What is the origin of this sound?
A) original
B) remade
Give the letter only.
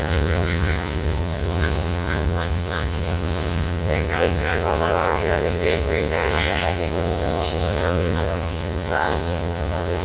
B